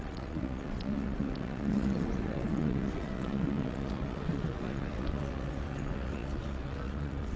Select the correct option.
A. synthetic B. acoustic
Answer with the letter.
A